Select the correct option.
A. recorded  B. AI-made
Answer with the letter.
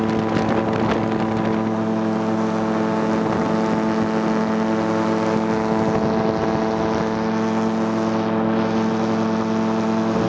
A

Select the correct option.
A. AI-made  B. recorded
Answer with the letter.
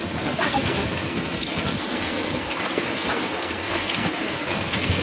A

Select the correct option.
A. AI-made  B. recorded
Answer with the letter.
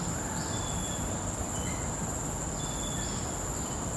B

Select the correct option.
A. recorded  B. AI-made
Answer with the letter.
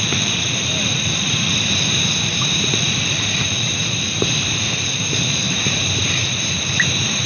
B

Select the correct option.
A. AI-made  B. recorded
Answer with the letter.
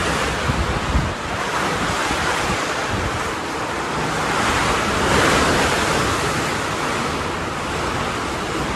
A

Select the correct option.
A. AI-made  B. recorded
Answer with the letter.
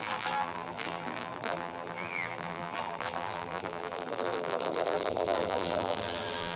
A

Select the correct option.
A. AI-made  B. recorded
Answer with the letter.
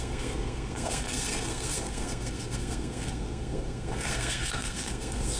A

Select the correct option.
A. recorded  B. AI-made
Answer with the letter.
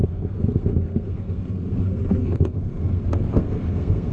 B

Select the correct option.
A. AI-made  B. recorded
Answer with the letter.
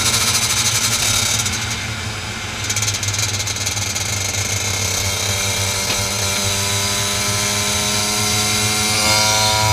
B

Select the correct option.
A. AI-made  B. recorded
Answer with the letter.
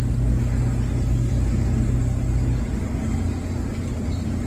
B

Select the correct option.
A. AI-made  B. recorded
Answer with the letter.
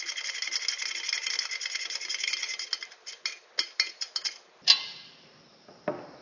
B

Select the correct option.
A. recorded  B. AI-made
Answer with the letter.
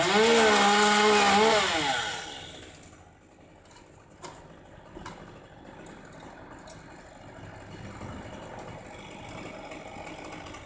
A